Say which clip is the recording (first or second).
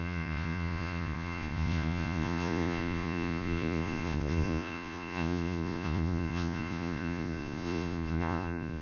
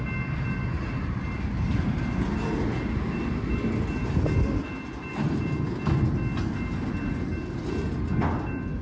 second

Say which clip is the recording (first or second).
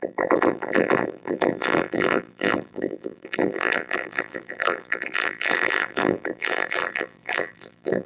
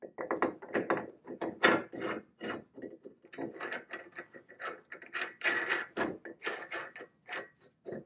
second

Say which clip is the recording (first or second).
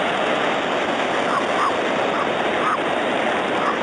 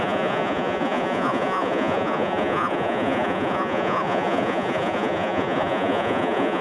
first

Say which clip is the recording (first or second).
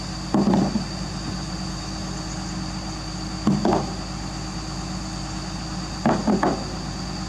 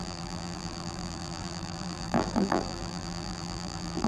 first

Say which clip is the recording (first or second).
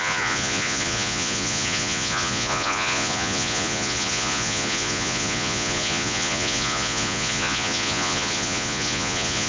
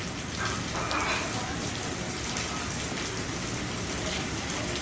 second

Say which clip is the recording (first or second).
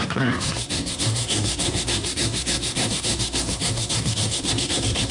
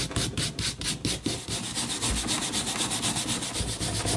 second